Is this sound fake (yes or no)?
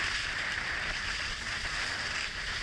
no